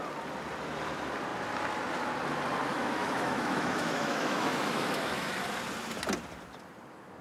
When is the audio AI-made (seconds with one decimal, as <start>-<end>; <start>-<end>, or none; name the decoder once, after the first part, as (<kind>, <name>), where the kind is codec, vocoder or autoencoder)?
2.7-5.3 (autoencoder, DAC-VAE)